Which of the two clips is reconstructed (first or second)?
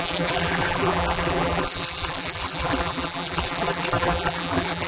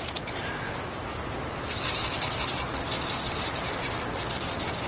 first